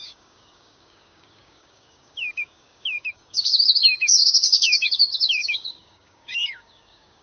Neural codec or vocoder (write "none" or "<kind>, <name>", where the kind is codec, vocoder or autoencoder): codec, DAC